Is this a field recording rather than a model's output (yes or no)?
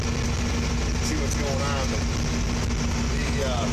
yes